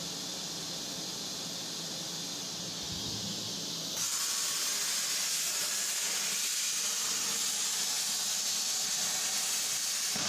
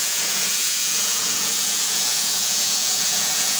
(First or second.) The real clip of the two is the first